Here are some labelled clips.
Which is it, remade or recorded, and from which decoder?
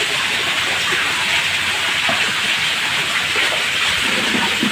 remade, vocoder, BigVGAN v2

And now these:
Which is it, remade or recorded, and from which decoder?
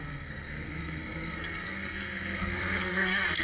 remade, codec, SNAC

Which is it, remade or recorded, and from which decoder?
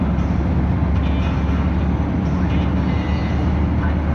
recorded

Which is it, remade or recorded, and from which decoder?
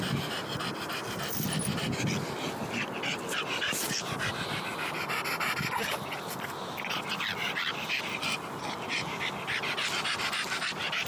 recorded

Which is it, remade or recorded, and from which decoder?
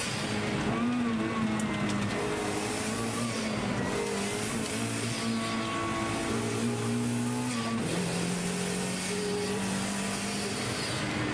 recorded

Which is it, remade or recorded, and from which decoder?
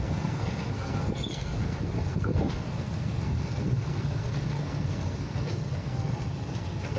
remade, codec, SNAC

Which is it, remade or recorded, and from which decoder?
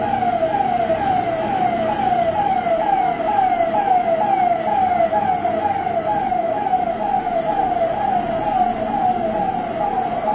recorded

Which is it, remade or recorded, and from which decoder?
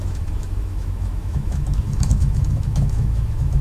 remade, autoencoder, DAC-VAE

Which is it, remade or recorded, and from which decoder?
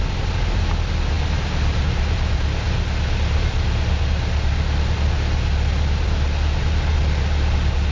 recorded